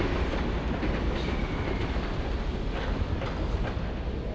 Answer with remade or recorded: recorded